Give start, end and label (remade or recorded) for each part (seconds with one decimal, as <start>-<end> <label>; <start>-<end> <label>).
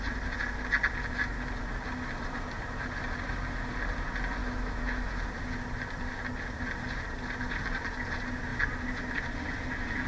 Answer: 0.0-4.4 recorded; 4.4-5.2 remade; 5.2-10.1 recorded